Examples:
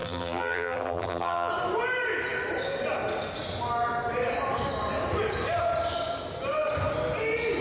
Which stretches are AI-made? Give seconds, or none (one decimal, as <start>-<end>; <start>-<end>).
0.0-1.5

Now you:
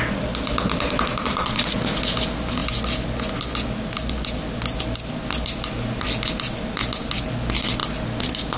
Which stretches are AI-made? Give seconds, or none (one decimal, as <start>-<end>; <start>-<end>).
1.1-1.6

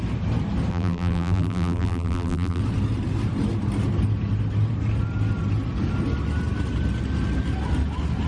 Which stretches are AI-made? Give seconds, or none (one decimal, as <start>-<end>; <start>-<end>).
0.7-2.6

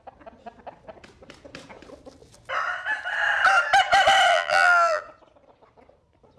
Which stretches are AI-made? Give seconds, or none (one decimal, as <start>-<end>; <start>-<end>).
4.3-5.0

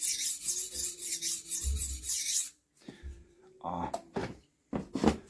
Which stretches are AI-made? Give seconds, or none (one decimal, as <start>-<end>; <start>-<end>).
1.8-3.4; 4.2-5.3

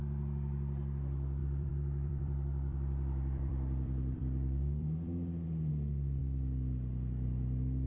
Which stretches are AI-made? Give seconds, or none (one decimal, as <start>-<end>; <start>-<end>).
1.4-5.7

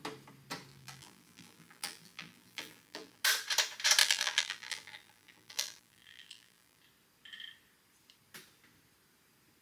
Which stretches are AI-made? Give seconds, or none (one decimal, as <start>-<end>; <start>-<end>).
0.7-3.2; 4.0-6.8

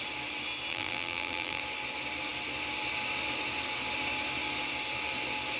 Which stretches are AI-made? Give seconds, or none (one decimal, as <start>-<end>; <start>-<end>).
0.7-1.6